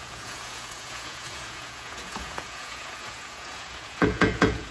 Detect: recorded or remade remade